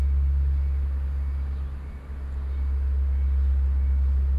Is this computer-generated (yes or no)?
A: no